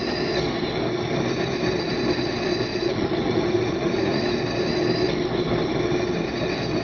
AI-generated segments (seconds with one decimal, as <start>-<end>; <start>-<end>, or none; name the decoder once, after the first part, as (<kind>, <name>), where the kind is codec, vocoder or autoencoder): 2.7-4.2 (vocoder, Vocos)